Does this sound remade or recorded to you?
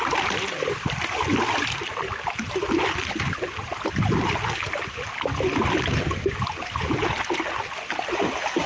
recorded